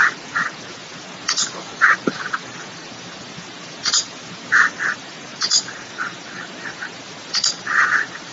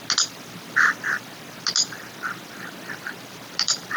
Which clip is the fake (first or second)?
first